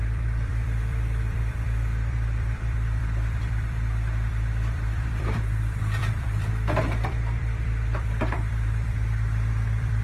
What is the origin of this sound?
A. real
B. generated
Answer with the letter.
B